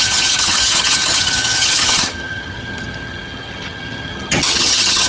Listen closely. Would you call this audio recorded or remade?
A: remade